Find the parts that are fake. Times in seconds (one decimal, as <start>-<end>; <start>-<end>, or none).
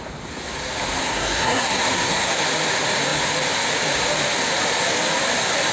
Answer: 1.0-2.4